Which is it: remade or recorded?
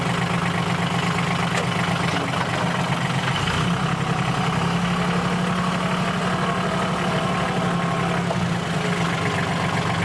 recorded